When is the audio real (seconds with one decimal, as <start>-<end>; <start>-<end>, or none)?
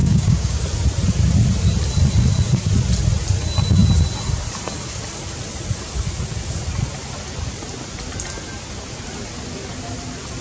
0.6-10.4